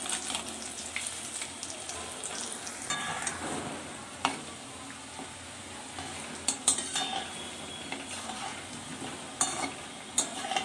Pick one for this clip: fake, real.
real